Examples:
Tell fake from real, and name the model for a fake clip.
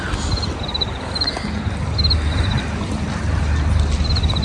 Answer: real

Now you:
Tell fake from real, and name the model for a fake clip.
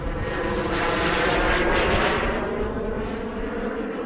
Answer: real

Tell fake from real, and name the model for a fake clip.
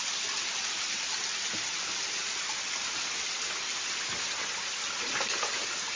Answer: real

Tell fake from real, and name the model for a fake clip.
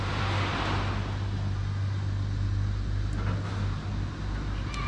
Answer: real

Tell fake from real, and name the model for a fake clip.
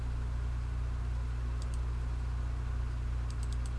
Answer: real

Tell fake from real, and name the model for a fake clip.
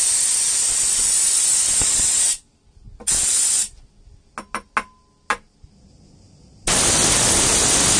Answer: real